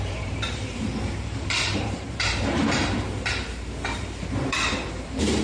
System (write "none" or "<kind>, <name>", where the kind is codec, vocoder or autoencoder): vocoder, BigVGAN v2